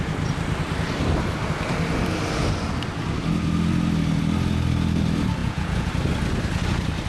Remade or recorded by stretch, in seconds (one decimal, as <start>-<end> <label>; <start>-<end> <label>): 0.0-5.4 recorded; 5.4-5.9 remade; 5.9-7.1 recorded